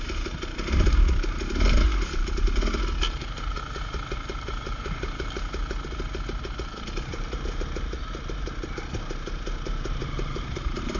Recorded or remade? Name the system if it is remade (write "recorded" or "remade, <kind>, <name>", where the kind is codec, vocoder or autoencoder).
recorded